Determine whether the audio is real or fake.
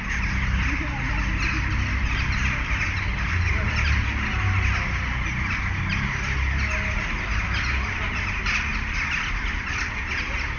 real